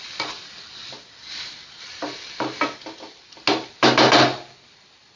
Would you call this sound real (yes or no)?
yes